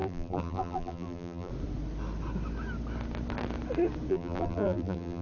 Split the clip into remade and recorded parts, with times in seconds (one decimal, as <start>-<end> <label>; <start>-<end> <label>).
0.0-1.5 remade; 1.5-4.1 recorded; 4.1-5.2 remade